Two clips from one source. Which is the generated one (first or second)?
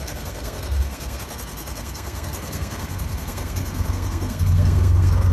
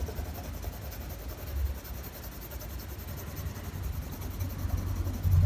first